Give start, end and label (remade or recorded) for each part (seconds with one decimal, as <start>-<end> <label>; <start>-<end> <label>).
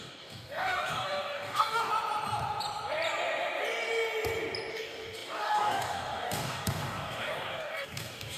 0.0-1.9 remade; 1.9-4.7 recorded; 4.7-8.4 remade